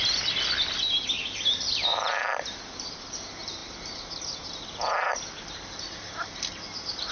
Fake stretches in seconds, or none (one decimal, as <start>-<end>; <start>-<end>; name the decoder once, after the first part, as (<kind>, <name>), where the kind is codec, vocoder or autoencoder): none